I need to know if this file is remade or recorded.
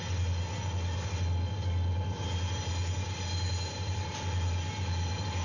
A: recorded